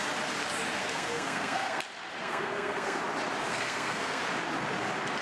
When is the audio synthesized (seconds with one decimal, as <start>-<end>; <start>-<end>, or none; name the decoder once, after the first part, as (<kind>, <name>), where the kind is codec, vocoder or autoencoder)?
0.8-1.8 (codec, SNAC); 2.2-3.0; 3.5-4.2